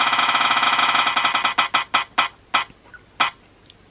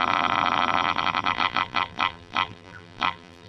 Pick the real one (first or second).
first